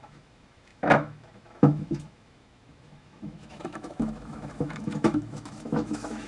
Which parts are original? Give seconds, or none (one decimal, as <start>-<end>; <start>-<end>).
none